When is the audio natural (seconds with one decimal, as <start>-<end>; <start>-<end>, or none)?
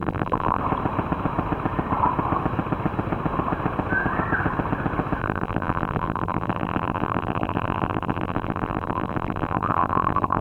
0.6-5.2